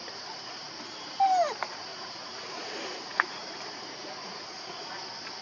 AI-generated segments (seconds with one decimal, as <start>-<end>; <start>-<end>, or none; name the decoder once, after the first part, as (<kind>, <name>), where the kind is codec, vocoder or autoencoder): 0.0-0.7 (vocoder, Vocos); 1.9-5.0